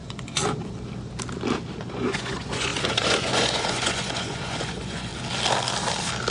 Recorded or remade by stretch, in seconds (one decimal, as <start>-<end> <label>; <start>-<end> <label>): 0.0-0.4 remade; 0.4-1.8 recorded; 1.8-5.1 remade; 5.1-6.3 recorded